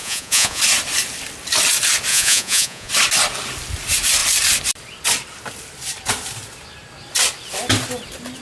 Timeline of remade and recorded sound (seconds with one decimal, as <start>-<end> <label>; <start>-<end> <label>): 0.0-0.6 remade; 0.6-2.1 recorded; 2.1-2.9 remade; 2.9-8.4 recorded